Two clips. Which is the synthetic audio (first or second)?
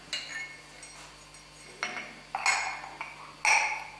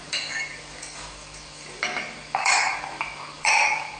second